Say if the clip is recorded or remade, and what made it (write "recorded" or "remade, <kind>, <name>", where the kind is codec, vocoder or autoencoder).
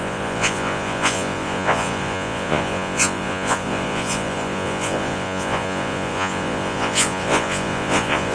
remade, vocoder, Vocos